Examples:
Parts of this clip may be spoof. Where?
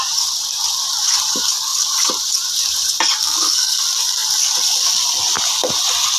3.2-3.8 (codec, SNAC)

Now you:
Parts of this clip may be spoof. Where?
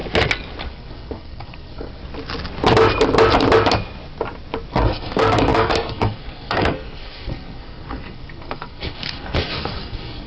0.7-2.0 (codec, SNAC); 4.7-10.3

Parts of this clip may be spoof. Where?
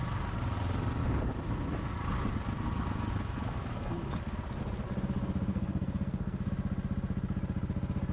5.5-6.5 (codec, SNAC)